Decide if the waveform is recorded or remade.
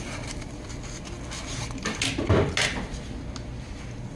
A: recorded